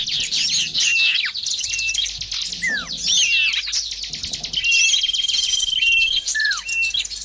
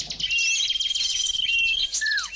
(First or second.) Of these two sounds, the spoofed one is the first